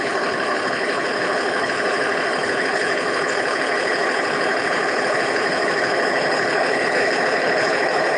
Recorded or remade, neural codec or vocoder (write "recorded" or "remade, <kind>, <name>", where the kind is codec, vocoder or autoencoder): remade, codec, HILCodec